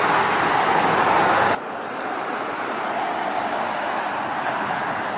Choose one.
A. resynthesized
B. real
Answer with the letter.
B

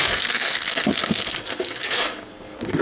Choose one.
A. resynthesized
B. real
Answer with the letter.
A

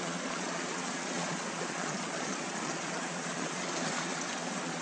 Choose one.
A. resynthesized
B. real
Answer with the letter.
A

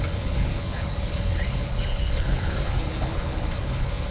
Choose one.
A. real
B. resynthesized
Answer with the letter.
B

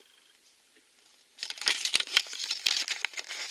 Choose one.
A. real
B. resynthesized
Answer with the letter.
B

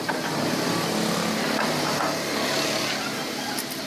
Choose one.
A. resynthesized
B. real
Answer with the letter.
B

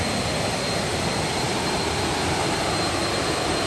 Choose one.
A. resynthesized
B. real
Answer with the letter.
B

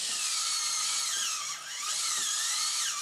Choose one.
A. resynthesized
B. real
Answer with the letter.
B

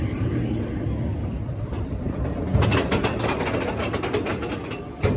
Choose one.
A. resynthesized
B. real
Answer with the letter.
B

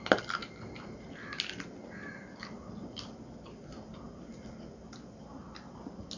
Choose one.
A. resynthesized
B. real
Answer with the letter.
B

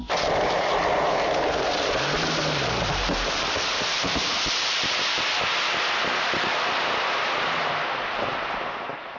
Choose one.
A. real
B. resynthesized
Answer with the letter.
B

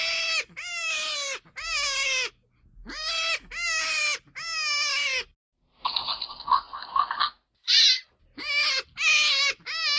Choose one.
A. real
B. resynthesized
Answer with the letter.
A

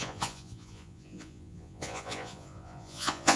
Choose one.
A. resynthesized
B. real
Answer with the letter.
A